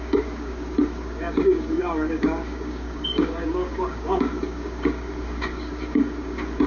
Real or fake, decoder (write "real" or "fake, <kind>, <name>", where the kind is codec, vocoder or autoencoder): fake, codec, DAC